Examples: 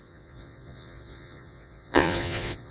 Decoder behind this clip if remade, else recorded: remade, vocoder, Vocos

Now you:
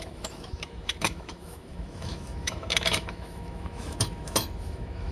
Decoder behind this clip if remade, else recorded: remade, autoencoder, DAC-VAE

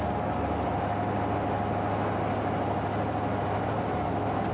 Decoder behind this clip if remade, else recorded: recorded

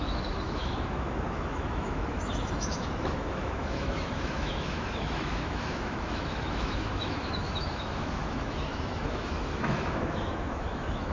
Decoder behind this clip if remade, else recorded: remade, autoencoder, DAC-VAE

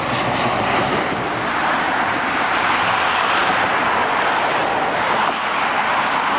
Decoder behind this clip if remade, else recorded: recorded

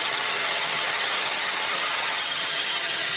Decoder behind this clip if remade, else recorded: remade, vocoder, HiFi-GAN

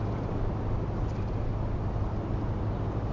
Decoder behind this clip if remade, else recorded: recorded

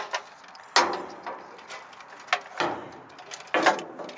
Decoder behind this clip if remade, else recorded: recorded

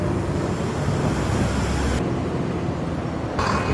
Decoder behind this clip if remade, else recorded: recorded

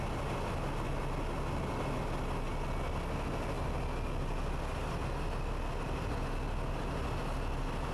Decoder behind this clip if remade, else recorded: recorded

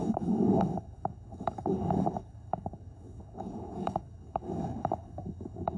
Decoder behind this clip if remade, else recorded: remade, codec, DAC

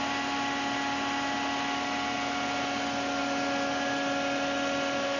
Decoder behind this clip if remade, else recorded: recorded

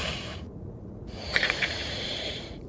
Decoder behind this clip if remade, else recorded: remade, vocoder, Vocos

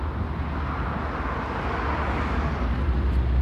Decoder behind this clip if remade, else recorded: recorded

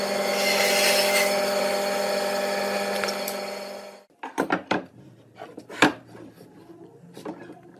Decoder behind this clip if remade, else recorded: recorded